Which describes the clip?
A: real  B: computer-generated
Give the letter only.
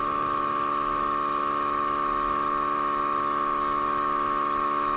B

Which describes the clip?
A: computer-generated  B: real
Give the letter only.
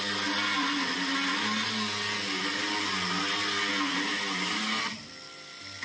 B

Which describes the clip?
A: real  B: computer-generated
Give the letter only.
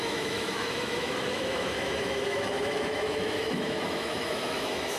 B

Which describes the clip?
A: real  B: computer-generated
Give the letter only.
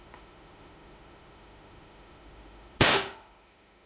B